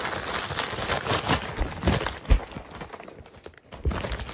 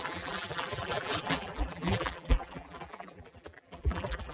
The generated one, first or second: second